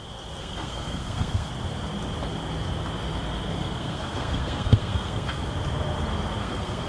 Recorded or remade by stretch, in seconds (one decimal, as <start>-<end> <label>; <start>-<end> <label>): 0.0-0.4 recorded; 0.4-1.5 remade; 1.5-3.6 recorded; 3.6-5.5 remade; 5.5-6.4 recorded; 6.4-6.9 remade